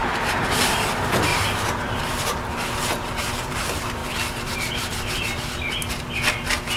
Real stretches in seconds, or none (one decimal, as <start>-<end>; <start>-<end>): none